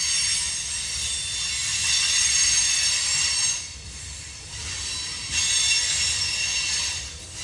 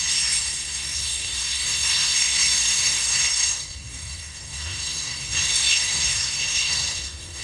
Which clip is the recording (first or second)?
first